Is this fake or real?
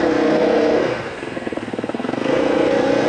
fake